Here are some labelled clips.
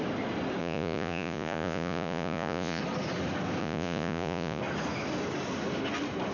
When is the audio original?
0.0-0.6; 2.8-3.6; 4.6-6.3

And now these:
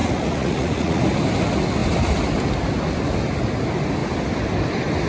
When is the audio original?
1.0-5.1

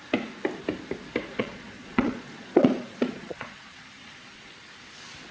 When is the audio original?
0.0-1.3; 4.5-5.3

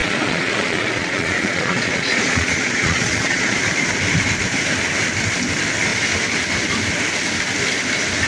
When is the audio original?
3.6-8.3

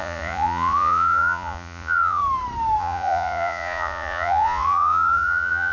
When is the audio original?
2.2-2.8

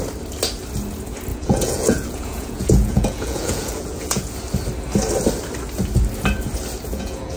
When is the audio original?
0.0-1.3; 4.4-6.9

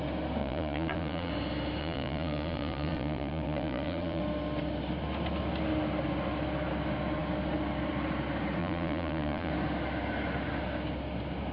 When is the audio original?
0.0-0.4; 1.3-1.8; 4.2-8.6; 9.5-11.5

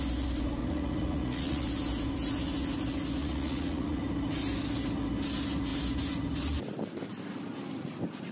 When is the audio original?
0.0-0.6; 1.7-3.2; 4.0-8.3